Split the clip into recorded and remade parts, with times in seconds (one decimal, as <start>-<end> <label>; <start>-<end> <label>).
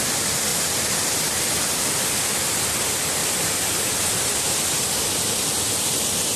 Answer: 0.0-0.5 recorded; 0.5-1.2 remade; 1.2-3.2 recorded; 3.2-4.0 remade; 4.0-6.4 recorded